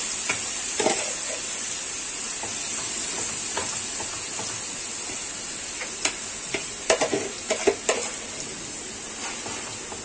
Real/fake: real